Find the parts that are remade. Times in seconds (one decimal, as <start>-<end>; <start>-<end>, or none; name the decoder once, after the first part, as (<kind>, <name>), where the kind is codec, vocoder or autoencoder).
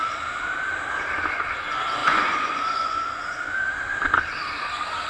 2.0-3.4 (vocoder, Vocos)